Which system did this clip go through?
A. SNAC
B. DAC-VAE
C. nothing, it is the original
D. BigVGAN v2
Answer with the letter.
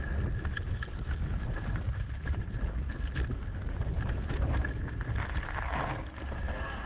C